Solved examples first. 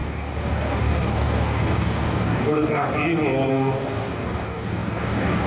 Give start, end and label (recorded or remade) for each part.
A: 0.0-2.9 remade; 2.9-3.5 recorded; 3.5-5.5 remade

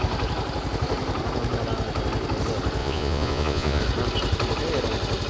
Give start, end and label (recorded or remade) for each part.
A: 0.0-2.8 recorded; 2.8-3.8 remade; 3.8-5.3 recorded

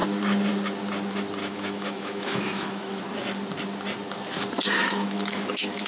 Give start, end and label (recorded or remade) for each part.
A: 0.0-1.4 recorded; 1.4-3.0 remade; 3.0-4.8 recorded; 4.8-5.9 remade

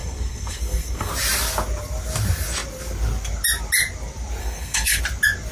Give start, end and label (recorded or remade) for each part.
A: 0.0-1.1 remade; 1.1-4.4 recorded; 4.4-5.0 remade; 5.0-5.5 recorded

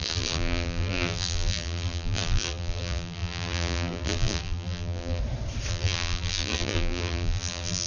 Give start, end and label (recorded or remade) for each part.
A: 0.0-5.2 remade; 5.2-5.7 recorded; 5.7-7.9 remade